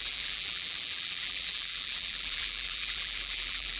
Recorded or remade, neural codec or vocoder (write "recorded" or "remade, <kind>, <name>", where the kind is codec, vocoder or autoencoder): remade, vocoder, BigVGAN v2